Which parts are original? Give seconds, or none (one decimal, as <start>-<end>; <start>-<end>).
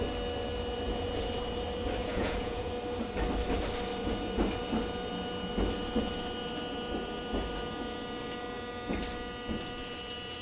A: 0.0-2.0; 2.7-10.4